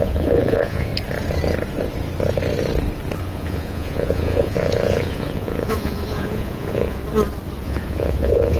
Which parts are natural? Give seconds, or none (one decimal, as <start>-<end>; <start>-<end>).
0.9-3.2; 7.0-7.6